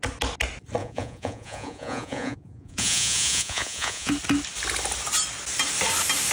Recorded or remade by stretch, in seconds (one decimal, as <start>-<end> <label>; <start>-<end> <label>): 0.0-0.8 recorded; 0.8-4.1 remade; 4.1-6.3 recorded